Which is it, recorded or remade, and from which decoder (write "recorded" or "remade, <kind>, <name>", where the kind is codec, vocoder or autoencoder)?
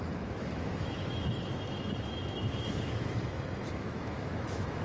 remade, autoencoder, DAC-VAE